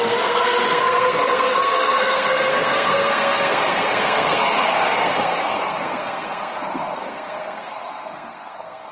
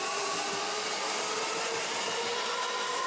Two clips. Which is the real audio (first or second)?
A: second